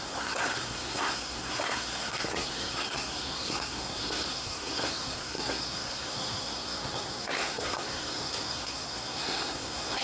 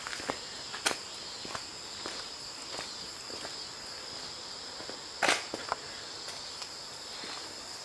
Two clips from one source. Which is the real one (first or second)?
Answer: second